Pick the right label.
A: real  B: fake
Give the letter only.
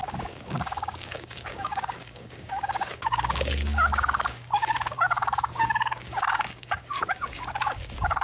B